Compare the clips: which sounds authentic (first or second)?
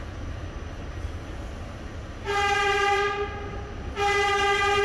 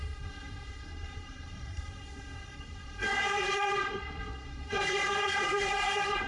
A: first